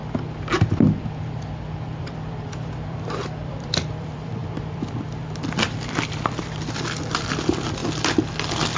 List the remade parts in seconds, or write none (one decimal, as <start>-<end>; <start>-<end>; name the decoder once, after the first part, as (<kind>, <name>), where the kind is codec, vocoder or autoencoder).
2.0-7.8 (vocoder, BigVGAN v2)